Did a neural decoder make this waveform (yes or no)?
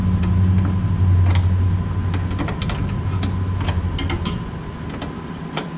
no